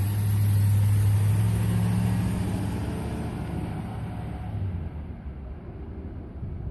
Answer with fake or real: real